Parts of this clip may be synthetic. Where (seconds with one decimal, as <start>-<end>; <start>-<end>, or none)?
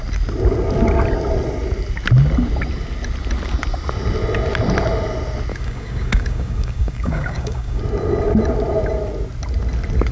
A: 5.5-7.8